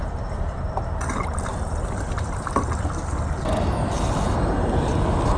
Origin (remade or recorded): recorded